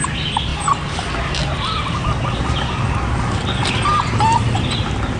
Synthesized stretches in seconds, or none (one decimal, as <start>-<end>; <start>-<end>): none